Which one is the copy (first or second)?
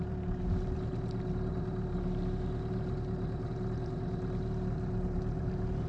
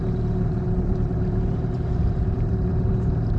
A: second